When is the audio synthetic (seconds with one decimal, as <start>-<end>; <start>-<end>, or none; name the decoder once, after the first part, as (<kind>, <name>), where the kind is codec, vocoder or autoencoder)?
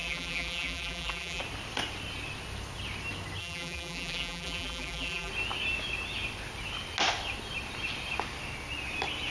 0.0-1.4 (vocoder, BigVGAN v2); 3.4-5.3